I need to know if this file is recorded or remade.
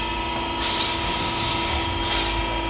recorded